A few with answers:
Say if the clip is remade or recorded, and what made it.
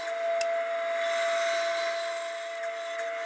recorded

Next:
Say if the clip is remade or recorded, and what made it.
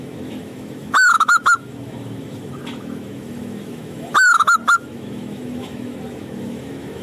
remade, autoencoder, DAC-VAE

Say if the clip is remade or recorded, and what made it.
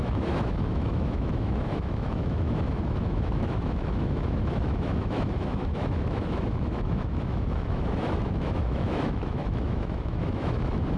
remade, autoencoder, DAC-VAE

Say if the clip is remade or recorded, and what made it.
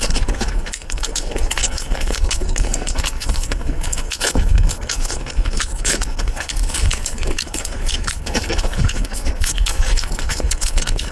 remade, codec, SNAC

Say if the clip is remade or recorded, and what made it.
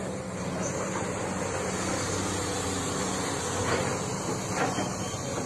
recorded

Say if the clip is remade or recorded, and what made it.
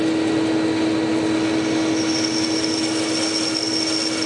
recorded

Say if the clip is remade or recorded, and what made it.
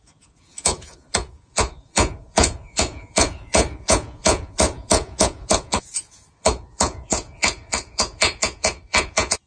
remade, vocoder, Vocos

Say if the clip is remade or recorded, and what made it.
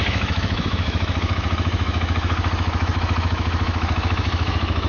remade, autoencoder, DAC-VAE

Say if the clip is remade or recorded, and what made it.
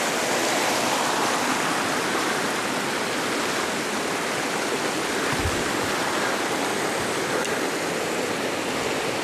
recorded